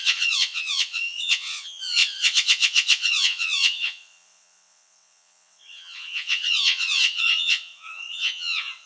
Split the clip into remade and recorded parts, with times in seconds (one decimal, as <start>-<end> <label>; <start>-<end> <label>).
0.0-8.9 remade